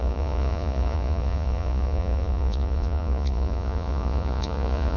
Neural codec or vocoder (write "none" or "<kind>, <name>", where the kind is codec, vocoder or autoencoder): vocoder, Vocos